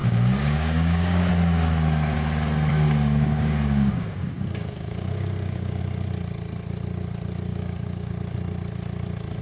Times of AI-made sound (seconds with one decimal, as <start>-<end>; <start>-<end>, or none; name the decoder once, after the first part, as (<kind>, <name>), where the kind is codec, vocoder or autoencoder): 0.0-1.3 (codec, DAC); 2.7-5.8; 7.5-8.1